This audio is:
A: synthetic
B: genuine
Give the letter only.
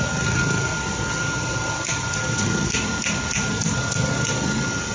B